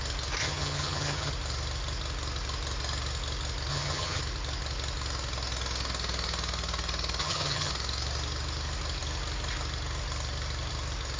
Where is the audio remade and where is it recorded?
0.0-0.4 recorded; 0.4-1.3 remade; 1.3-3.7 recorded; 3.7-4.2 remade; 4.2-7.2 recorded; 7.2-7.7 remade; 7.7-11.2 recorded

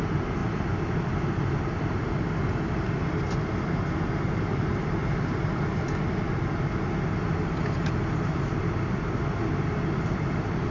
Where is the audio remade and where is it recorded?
0.0-0.4 recorded; 0.4-2.4 remade; 2.4-4.7 recorded; 4.7-5.7 remade; 5.7-10.7 recorded

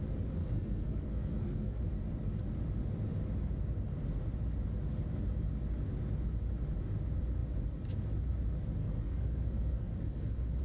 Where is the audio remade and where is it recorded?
0.0-0.4 recorded; 0.4-1.8 remade; 1.8-8.8 recorded; 8.8-10.6 remade

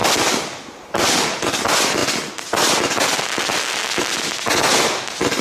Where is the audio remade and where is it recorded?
0.0-5.4 recorded

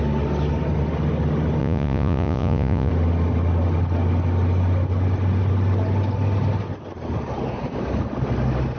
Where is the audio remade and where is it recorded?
0.0-1.6 recorded; 1.6-2.9 remade; 2.9-8.8 recorded